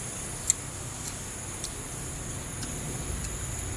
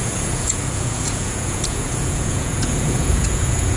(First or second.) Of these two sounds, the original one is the first